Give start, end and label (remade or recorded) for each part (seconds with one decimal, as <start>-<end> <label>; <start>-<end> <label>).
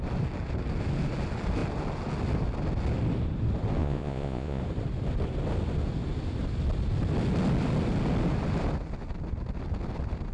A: 0.0-3.8 recorded; 3.8-4.6 remade; 4.6-10.3 recorded